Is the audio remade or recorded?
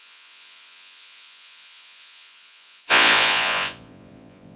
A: remade